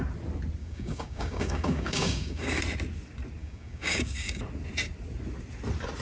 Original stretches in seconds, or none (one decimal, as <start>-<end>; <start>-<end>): 0.0-0.6; 2.6-3.4; 4.4-6.0